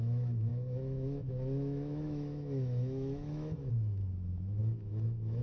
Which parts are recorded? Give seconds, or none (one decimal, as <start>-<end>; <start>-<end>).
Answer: none